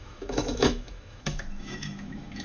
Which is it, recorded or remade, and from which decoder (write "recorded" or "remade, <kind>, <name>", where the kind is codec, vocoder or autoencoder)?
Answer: remade, autoencoder, DAC-VAE